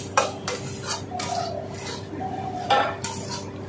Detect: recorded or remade recorded